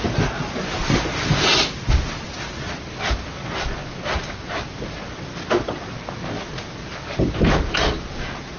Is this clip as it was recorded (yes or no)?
yes